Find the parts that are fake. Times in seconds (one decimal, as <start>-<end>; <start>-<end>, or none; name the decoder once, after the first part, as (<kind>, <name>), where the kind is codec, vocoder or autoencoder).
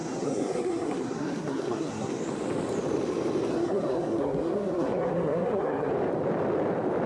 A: 0.0-2.1 (codec, SNAC); 3.5-5.9